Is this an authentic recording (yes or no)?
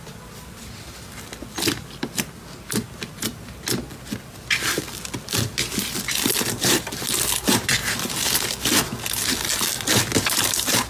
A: yes